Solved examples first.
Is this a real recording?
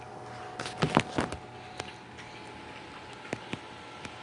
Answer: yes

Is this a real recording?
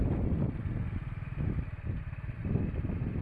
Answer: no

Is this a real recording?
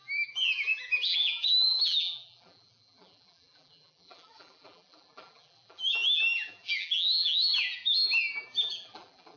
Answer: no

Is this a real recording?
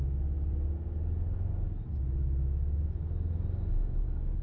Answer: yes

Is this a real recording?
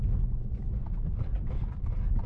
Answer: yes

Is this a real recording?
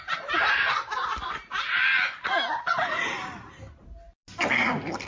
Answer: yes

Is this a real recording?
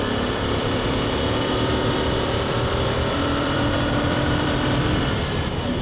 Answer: no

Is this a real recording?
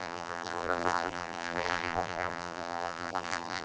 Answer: no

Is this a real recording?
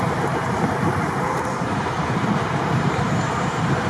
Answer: no